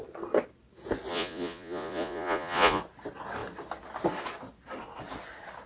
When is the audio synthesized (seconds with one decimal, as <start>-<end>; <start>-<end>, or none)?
1.1-2.8

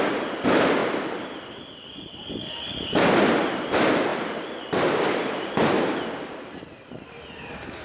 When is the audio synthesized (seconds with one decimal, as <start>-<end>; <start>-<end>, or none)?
none

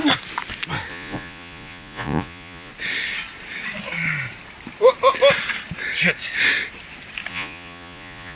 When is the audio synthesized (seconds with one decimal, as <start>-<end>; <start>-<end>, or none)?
0.9-2.7; 7.3-8.3

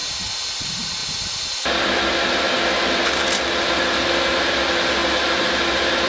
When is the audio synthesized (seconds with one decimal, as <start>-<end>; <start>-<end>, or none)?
none

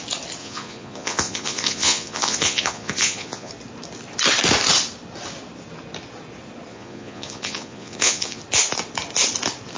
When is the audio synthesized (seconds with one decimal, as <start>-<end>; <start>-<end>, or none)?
0.4-3.5; 6.7-8.4